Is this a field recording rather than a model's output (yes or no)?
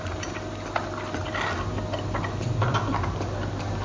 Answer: yes